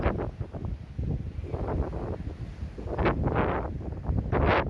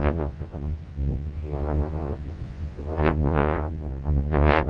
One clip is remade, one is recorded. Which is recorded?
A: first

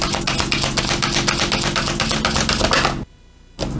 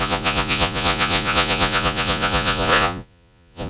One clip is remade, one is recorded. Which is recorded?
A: first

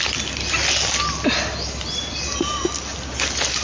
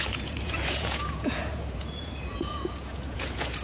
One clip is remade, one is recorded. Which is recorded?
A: first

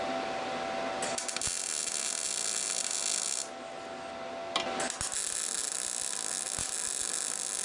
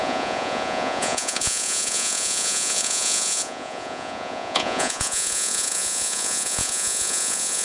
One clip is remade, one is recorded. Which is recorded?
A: first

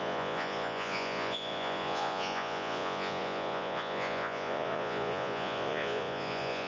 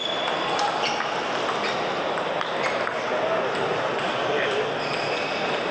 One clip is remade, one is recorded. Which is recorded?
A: second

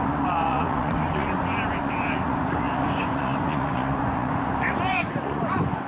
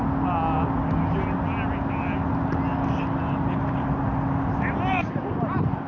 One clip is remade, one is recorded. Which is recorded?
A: second